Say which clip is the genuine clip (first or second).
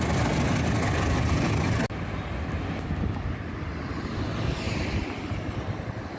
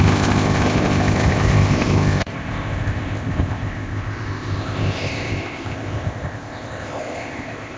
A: first